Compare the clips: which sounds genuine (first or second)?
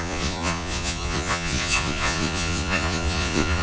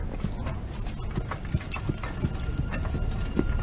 second